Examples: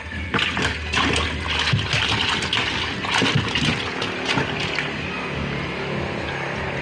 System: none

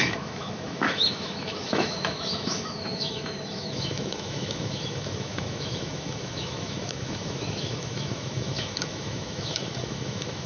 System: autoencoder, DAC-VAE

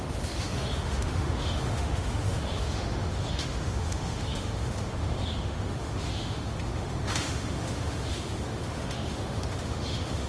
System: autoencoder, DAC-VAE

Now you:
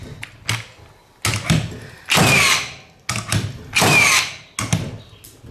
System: none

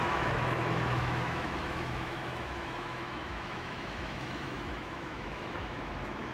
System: autoencoder, DAC-VAE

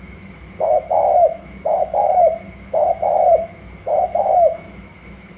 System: autoencoder, DAC-VAE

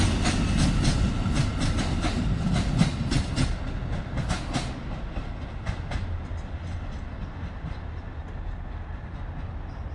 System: none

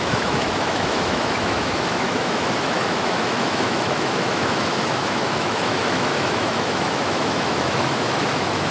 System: autoencoder, DAC-VAE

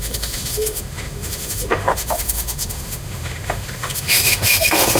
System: autoencoder, DAC-VAE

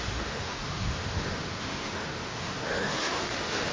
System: autoencoder, DAC-VAE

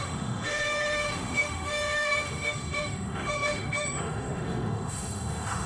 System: autoencoder, DAC-VAE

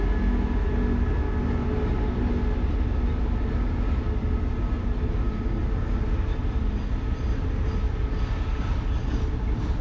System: none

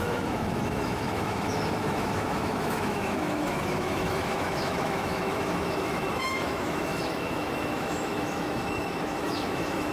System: autoencoder, DAC-VAE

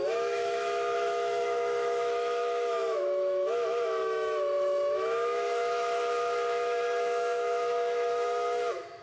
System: autoencoder, DAC-VAE